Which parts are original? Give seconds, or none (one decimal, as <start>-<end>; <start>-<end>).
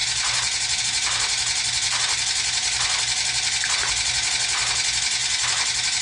0.0-5.2